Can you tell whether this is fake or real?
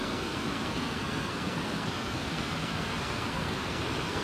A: fake